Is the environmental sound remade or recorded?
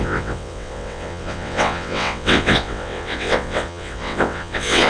remade